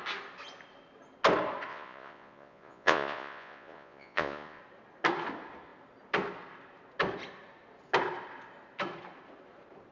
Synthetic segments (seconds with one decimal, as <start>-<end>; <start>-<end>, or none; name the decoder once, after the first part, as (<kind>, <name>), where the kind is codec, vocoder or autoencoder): 1.7-4.6 (vocoder, Vocos)